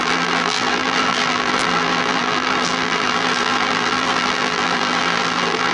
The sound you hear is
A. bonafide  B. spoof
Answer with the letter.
B